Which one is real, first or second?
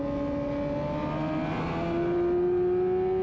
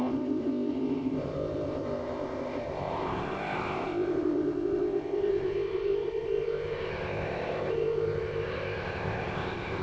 first